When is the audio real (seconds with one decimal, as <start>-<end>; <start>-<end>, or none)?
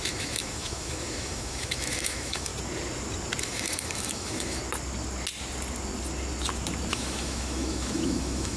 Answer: 2.5-3.4; 4.6-6.9